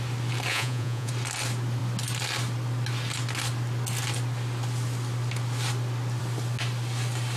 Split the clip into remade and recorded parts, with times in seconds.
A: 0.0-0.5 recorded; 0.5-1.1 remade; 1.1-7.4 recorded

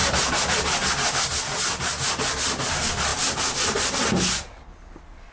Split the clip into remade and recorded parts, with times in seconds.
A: 0.0-5.3 recorded

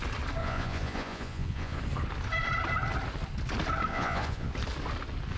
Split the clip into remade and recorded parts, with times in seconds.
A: 0.0-0.4 recorded; 0.4-1.8 remade; 1.8-3.9 recorded; 3.9-4.5 remade; 4.5-5.4 recorded

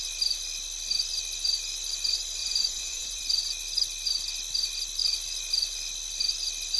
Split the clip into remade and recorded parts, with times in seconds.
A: 0.0-2.4 recorded; 2.4-3.2 remade; 3.2-6.8 recorded

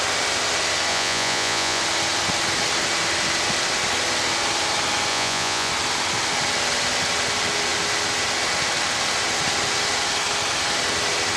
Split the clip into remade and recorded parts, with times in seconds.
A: 0.0-0.9 recorded; 0.9-1.8 remade; 1.8-5.1 recorded; 5.1-5.7 remade; 5.7-11.4 recorded